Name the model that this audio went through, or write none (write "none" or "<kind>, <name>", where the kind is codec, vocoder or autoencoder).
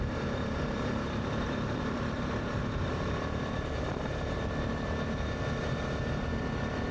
vocoder, BigVGAN v2